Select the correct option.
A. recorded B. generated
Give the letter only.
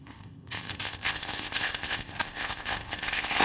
B